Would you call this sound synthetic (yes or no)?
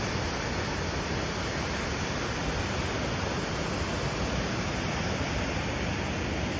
no